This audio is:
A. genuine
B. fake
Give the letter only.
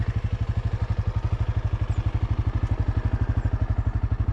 A